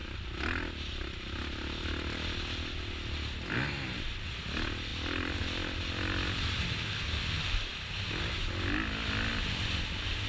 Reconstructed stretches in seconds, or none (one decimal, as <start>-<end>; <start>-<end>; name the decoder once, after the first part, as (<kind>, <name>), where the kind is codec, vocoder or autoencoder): none